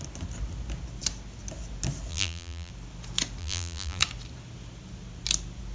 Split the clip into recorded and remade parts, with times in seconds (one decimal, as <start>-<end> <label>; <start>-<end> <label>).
0.0-2.1 recorded; 2.1-2.7 remade; 2.7-3.4 recorded; 3.4-4.0 remade; 4.0-5.7 recorded

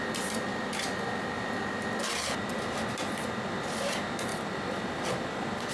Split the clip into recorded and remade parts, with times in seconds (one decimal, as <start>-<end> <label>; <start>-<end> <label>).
0.0-0.5 recorded; 0.5-3.9 remade; 3.9-4.3 recorded; 4.3-5.7 remade